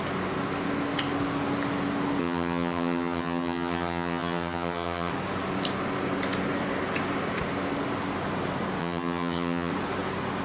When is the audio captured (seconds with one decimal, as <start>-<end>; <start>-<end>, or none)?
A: 0.0-2.2; 5.1-8.8; 9.7-10.4